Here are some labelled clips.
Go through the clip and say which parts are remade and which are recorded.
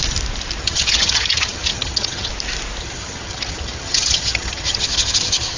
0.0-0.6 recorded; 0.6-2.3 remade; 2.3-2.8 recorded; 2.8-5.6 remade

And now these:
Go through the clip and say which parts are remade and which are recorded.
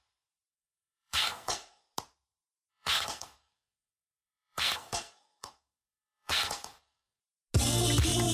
0.0-0.5 recorded; 0.5-1.8 remade; 1.8-2.7 recorded; 2.7-7.2 remade; 7.2-8.3 recorded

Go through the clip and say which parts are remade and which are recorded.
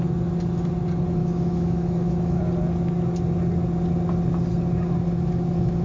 0.0-1.2 recorded; 1.2-2.4 remade; 2.4-5.8 recorded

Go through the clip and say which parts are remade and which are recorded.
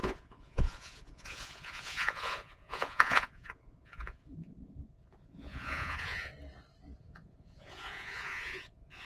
0.0-6.3 remade; 6.3-7.0 recorded; 7.0-9.0 remade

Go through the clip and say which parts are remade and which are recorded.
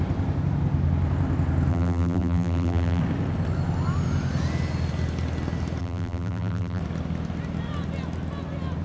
0.0-1.7 recorded; 1.7-3.0 remade; 3.0-5.8 recorded; 5.8-6.8 remade; 6.8-8.8 recorded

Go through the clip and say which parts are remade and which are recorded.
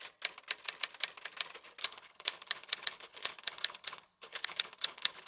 0.0-1.8 recorded; 1.8-5.3 remade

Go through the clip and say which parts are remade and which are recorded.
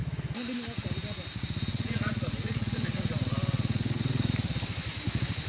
0.0-1.7 recorded; 1.7-4.3 remade; 4.3-5.5 recorded